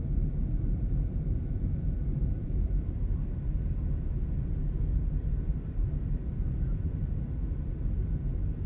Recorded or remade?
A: remade